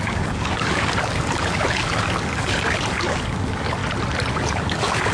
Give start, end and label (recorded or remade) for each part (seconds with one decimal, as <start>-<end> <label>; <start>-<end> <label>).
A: 0.0-3.8 remade; 3.8-4.3 recorded; 4.3-5.1 remade

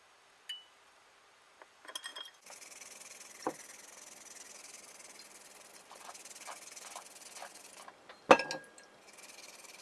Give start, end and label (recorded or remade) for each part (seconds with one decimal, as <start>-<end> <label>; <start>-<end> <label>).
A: 0.0-9.8 recorded

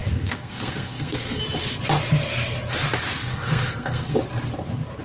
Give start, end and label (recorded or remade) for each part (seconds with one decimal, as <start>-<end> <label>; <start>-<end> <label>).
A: 0.0-1.4 remade; 1.4-3.2 recorded; 3.2-4.2 remade; 4.2-5.0 recorded

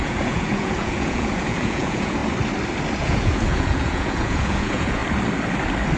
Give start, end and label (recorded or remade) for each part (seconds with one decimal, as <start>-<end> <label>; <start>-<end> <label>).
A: 0.0-2.2 remade; 2.2-3.0 recorded; 3.0-5.0 remade; 5.0-6.0 recorded

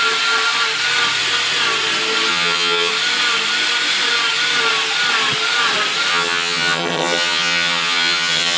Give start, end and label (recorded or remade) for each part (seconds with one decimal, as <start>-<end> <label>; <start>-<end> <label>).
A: 0.0-2.3 recorded; 2.3-2.9 remade; 2.9-6.1 recorded; 6.1-8.6 remade

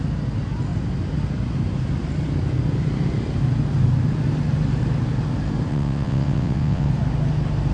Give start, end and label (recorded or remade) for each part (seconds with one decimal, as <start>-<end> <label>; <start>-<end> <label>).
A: 0.0-5.7 recorded; 5.7-6.9 remade; 6.9-7.7 recorded

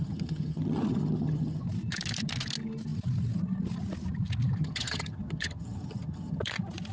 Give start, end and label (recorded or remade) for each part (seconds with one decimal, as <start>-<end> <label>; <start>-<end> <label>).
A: 0.0-1.6 remade; 1.6-4.6 recorded; 4.6-6.4 remade; 6.4-6.9 recorded

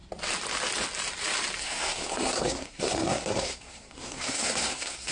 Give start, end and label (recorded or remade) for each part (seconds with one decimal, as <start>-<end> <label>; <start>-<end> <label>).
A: 0.0-1.6 recorded; 1.6-5.1 remade